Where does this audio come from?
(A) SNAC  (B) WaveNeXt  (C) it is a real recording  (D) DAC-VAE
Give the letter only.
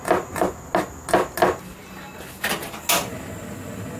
C